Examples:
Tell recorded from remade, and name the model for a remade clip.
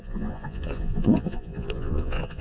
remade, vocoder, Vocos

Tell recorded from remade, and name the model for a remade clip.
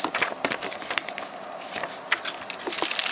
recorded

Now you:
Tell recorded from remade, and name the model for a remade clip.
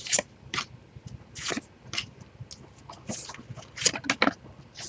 recorded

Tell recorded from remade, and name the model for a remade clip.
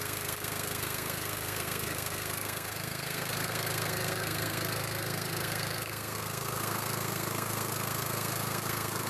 remade, codec, SNAC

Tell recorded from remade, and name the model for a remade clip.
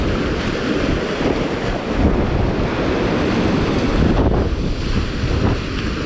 recorded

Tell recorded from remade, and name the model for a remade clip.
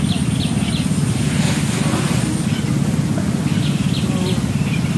recorded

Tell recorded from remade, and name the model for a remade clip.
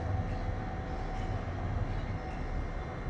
recorded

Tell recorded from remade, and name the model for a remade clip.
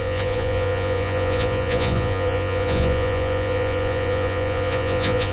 remade, vocoder, Vocos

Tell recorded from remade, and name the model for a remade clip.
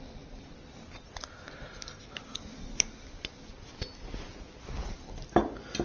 recorded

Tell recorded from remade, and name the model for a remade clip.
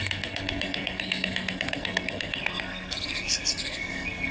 remade, codec, SNAC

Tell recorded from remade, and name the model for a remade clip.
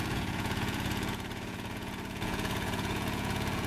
remade, vocoder, Vocos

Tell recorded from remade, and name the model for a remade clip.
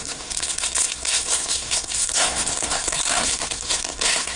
remade, codec, SNAC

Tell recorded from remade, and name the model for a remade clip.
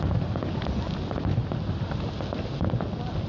recorded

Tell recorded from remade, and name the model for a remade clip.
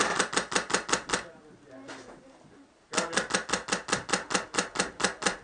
recorded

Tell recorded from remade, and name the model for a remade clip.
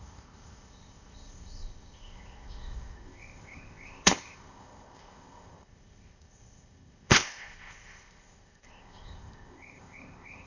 remade, codec, ZipCodec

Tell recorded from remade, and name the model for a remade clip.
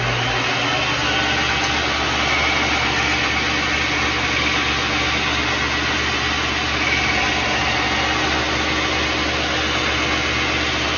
recorded